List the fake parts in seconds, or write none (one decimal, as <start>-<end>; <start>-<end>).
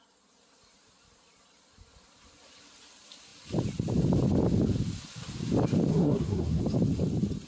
5.9-6.6